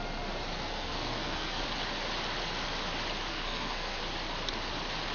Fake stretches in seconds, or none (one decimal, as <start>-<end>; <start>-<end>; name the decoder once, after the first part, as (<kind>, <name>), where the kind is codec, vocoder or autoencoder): 0.5-1.6 (codec, SNAC); 3.3-4.0